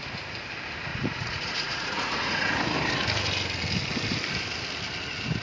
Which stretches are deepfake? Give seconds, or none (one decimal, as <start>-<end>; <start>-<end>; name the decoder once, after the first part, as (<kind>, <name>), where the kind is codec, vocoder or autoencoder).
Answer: 0.9-2.5 (vocoder, Vocos)